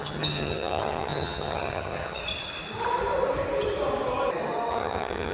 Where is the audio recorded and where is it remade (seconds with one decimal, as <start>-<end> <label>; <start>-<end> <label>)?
0.0-2.2 remade; 2.2-4.7 recorded; 4.7-5.3 remade